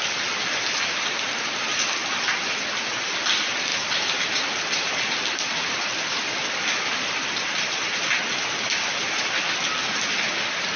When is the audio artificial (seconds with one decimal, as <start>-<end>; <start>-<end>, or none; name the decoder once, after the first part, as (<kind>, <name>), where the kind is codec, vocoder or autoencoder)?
2.0-2.6 (vocoder, BigVGAN v2); 3.7-7.6